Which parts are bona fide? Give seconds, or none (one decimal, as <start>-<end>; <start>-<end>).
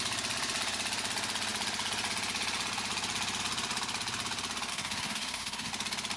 0.0-4.7; 5.7-6.2